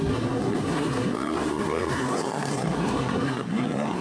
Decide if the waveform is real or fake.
fake